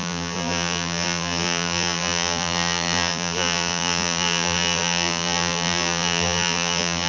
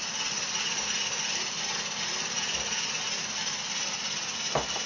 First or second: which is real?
second